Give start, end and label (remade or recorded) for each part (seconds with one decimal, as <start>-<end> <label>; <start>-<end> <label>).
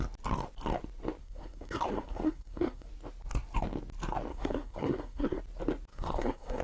0.0-1.2 recorded; 1.2-2.9 remade; 2.9-4.3 recorded; 4.3-5.4 remade; 5.4-5.9 recorded; 5.9-6.6 remade